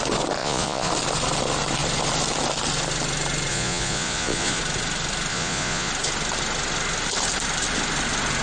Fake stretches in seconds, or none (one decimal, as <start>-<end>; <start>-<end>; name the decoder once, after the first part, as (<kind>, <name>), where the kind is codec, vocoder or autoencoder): 0.4-0.9 (vocoder, Vocos); 3.5-4.6; 5.3-5.9